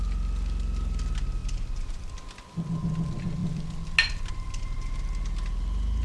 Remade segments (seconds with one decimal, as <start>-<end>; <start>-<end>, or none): none